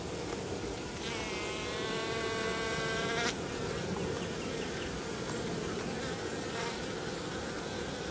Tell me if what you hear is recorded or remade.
recorded